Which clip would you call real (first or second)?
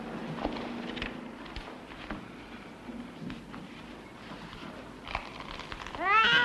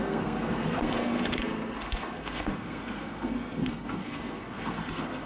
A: first